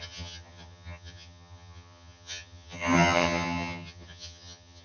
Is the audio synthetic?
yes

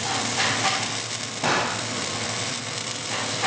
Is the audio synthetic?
yes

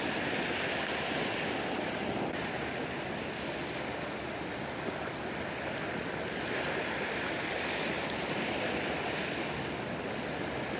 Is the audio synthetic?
no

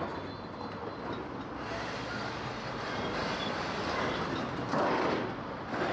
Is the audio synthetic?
no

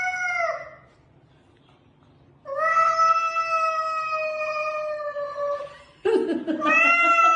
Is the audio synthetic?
no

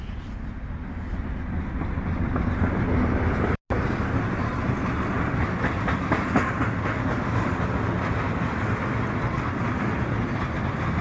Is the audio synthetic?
no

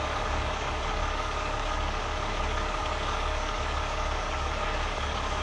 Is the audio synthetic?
yes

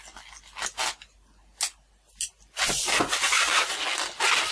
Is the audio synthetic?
no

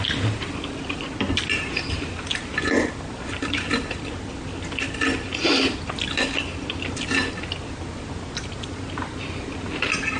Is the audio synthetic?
no